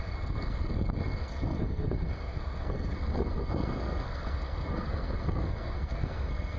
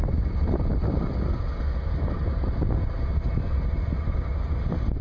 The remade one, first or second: first